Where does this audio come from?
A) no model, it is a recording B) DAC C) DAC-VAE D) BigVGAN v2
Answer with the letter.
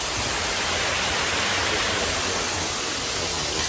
A